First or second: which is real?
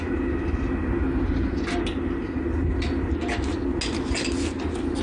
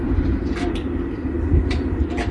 first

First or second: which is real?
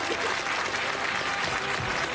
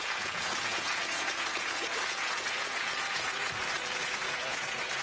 first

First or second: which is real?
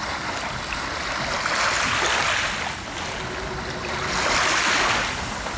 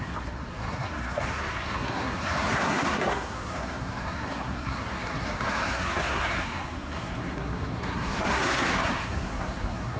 first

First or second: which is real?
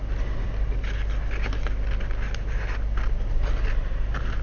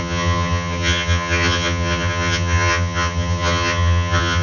first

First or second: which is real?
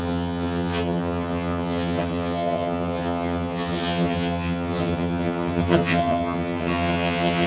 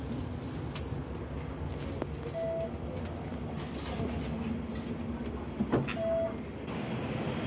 second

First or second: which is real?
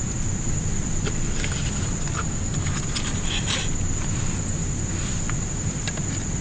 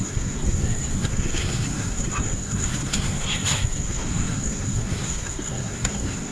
first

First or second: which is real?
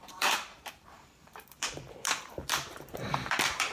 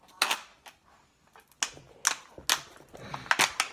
second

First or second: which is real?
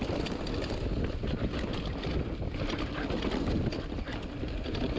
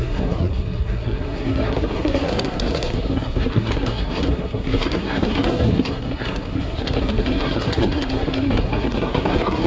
first